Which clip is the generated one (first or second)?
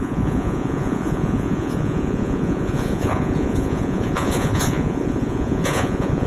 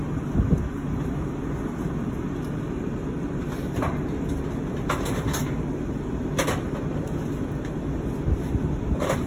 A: first